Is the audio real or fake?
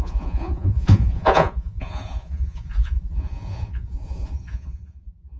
fake